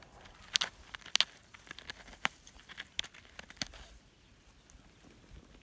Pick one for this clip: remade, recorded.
recorded